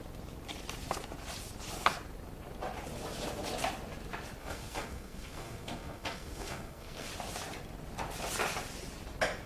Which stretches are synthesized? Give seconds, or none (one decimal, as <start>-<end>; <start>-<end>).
4.4-7.1